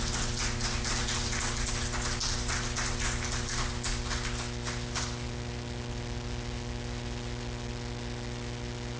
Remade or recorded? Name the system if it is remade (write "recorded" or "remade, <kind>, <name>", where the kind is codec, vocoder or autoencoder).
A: recorded